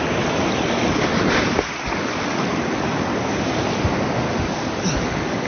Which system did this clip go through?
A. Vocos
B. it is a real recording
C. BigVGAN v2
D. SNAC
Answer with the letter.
B